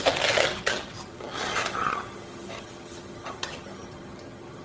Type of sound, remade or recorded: remade